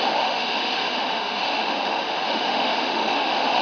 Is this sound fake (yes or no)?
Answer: yes